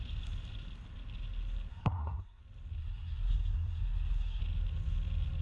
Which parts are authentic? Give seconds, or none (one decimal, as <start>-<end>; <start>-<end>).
0.0-1.7; 2.4-2.8; 4.4-5.4